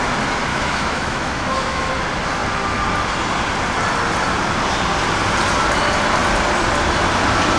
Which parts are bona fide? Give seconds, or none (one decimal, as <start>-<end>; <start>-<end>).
0.0-0.5; 1.9-7.6

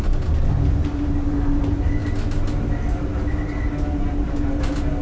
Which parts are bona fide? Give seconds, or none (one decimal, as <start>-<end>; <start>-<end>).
0.0-5.0

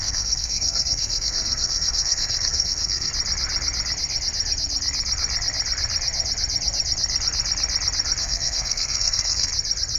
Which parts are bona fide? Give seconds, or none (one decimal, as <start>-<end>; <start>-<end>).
3.1-8.2; 9.5-10.0

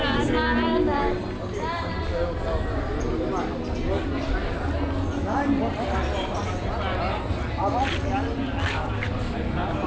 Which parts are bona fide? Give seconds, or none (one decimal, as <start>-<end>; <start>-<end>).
0.0-9.9